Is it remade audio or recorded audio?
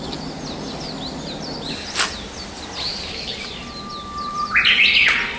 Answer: recorded